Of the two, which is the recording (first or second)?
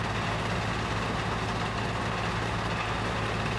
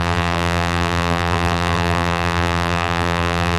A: first